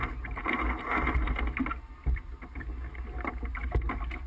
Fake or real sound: real